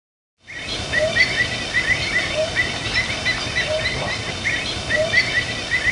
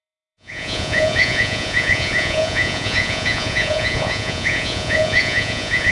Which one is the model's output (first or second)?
second